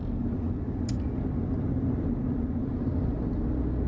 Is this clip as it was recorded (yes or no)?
yes